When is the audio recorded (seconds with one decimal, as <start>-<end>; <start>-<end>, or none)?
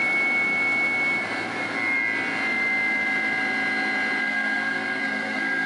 0.0-4.2